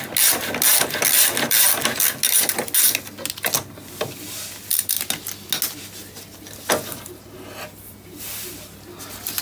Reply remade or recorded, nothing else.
recorded